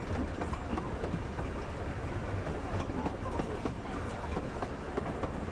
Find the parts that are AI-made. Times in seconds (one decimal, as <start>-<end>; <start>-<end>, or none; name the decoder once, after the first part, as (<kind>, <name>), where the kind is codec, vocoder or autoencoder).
0.6-1.5 (autoencoder, DAC-VAE); 2.0-3.1; 4.1-5.0